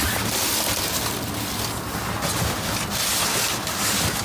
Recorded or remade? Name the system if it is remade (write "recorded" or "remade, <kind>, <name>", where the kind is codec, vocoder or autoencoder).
recorded